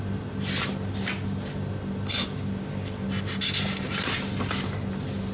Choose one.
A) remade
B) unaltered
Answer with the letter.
B